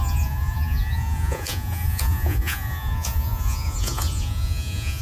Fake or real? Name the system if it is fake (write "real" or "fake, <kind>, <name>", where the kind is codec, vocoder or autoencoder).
fake, vocoder, Vocos